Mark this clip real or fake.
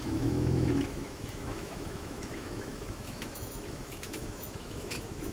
fake